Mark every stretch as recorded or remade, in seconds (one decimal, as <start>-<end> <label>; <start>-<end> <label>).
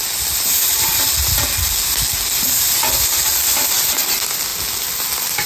0.0-5.5 recorded